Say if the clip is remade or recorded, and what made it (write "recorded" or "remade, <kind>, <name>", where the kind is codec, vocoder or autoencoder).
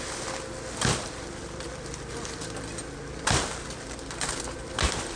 recorded